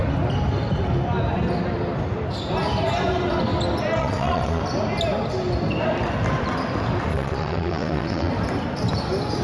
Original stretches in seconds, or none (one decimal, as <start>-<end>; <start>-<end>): 0.0-4.0; 4.6-7.1; 8.3-9.4